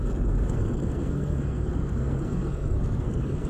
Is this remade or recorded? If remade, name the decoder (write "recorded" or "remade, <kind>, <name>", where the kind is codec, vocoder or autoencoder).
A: remade, codec, SNAC